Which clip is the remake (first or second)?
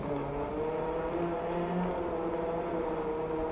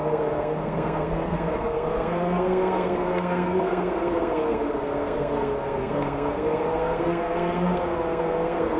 second